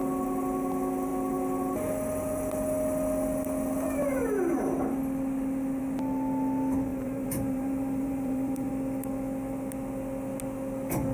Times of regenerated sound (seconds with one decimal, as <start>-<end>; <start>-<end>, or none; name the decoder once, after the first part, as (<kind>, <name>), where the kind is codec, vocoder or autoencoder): 6.9-8.7 (vocoder, BigVGAN v2)